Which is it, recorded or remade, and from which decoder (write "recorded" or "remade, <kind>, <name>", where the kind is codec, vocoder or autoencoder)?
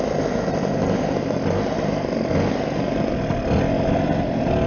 recorded